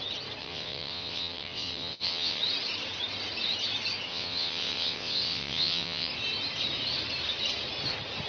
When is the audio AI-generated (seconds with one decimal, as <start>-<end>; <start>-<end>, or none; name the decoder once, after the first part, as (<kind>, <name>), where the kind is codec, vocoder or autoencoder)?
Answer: 0.4-2.4 (vocoder, WaveNeXt); 4.1-6.1